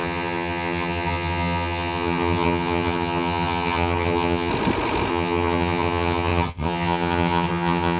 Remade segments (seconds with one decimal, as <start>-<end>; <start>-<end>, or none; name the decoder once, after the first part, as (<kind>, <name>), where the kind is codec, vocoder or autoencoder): 0.0-4.5 (vocoder, HiFi-GAN); 5.1-8.0